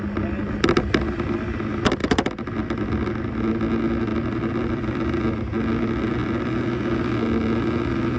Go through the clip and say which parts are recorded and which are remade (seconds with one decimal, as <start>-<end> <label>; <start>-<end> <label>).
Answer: 0.0-8.2 recorded